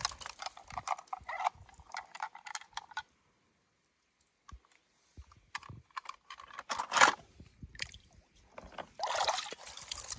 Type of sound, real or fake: real